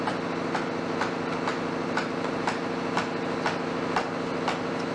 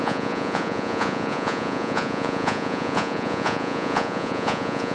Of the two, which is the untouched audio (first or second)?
first